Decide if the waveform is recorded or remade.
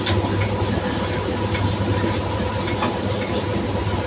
recorded